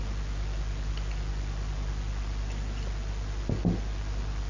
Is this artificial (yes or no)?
no